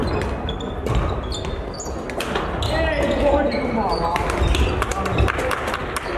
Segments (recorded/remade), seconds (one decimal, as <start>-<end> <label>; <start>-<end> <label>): 0.0-6.2 recorded